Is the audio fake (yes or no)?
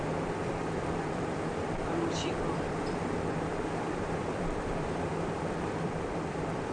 yes